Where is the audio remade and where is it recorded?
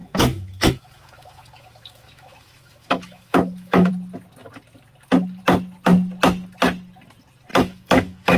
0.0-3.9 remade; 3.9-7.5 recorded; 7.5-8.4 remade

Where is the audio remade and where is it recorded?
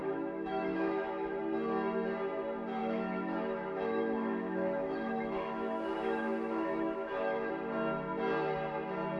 0.0-1.4 remade; 1.4-2.8 recorded; 2.8-7.5 remade; 7.5-9.2 recorded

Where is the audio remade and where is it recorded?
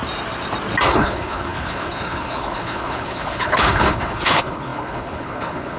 0.0-0.9 recorded; 0.9-5.8 remade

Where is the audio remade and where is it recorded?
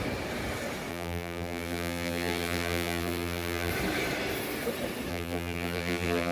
0.0-0.9 recorded; 0.9-3.7 remade; 3.7-5.1 recorded; 5.1-6.3 remade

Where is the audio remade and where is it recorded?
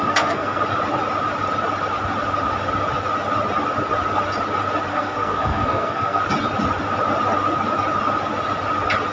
0.0-0.6 remade; 0.6-4.9 recorded; 4.9-6.2 remade; 6.2-9.1 recorded